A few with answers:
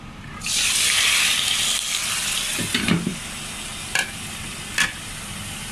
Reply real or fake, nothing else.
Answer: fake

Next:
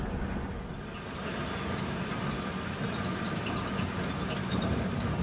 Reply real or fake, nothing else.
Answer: real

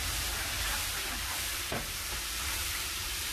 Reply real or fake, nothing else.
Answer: fake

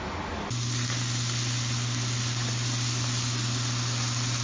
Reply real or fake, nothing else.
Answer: real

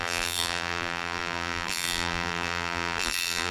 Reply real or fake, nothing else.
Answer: fake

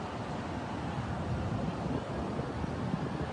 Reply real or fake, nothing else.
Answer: real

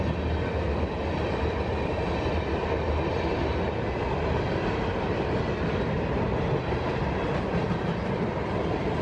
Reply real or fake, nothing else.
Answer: real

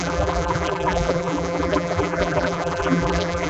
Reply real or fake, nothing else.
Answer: fake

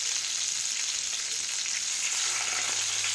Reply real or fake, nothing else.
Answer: real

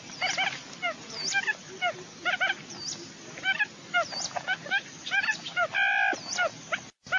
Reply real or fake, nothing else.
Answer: fake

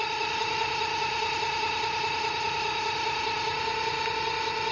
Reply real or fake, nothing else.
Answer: real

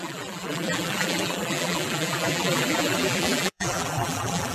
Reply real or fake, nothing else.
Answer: fake